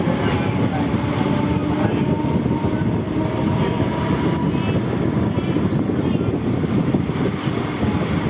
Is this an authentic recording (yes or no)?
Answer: yes